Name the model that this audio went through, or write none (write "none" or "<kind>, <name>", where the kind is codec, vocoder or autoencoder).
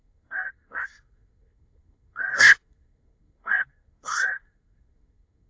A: codec, SNAC